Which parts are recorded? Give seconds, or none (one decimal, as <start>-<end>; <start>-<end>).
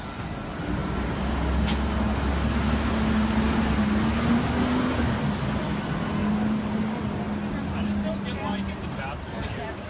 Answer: 0.0-9.9